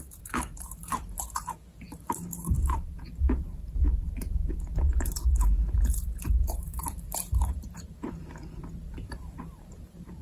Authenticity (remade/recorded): remade